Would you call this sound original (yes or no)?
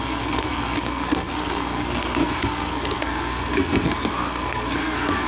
no